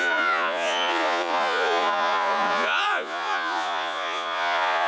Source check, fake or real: fake